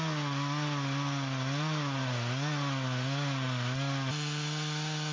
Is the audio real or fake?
real